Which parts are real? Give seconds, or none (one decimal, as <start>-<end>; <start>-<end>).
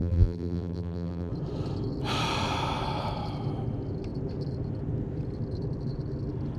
1.3-6.6